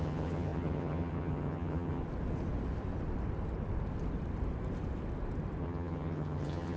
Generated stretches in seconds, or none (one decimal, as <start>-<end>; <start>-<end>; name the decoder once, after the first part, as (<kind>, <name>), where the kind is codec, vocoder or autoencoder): 0.0-2.0 (vocoder, HiFi-GAN); 5.6-6.8